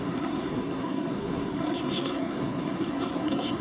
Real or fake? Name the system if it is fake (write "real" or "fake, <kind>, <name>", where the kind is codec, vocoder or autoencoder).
fake, codec, SNAC